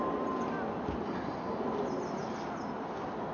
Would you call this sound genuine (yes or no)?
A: yes